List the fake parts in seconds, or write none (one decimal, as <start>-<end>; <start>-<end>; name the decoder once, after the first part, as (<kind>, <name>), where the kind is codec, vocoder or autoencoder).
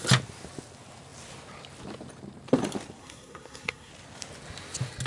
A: 3.0-3.9 (codec, SNAC)